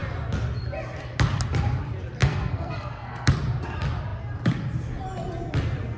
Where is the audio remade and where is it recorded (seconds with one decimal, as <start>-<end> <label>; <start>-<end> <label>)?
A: 0.0-2.2 recorded; 2.2-3.3 remade; 3.3-6.0 recorded